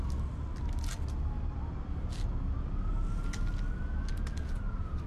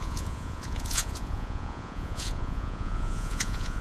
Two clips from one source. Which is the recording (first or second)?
first